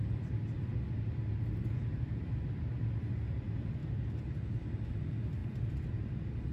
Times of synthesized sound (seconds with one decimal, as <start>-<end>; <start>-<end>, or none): 3.8-4.6